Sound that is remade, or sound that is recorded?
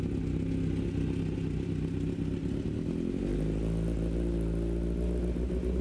recorded